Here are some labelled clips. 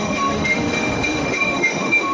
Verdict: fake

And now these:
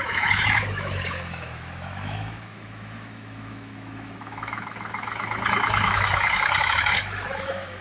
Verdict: fake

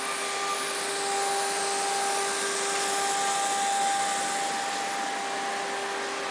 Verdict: real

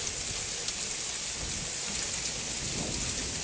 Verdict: real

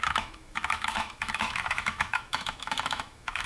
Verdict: fake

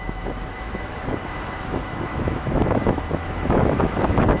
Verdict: fake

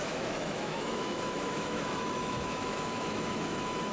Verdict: fake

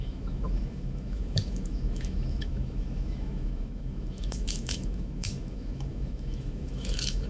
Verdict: fake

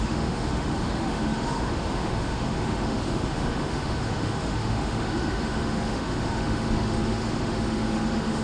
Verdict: fake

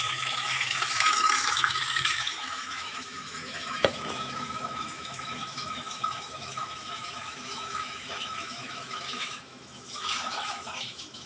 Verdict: fake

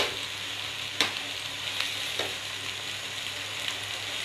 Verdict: real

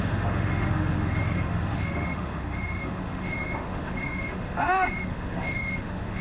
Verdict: fake